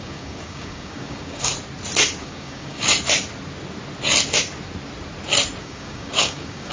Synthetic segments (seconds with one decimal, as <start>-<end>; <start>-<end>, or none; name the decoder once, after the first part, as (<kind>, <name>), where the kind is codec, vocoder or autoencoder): 0.0-1.5 (codec, DAC); 2.2-2.9; 5.6-6.7